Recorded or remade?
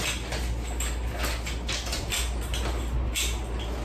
recorded